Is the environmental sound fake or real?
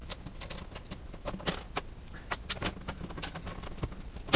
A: real